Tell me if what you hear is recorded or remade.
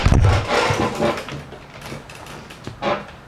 recorded